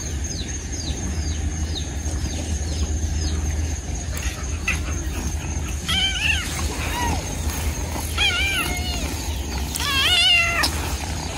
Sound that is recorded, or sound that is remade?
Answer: recorded